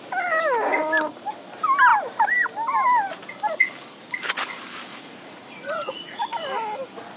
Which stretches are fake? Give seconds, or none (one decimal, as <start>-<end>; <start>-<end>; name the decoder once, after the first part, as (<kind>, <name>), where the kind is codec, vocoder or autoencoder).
4.9-6.2 (vocoder, Vocos)